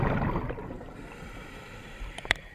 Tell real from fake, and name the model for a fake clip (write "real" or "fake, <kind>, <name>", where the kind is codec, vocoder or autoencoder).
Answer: fake, vocoder, BigVGAN v2